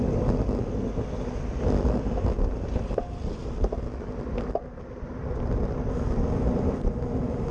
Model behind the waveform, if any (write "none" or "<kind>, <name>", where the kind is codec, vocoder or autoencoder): none